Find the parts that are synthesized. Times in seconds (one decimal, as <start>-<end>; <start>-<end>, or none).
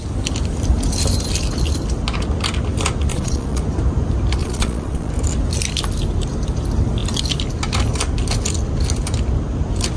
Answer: 3.1-3.6; 4.4-5.1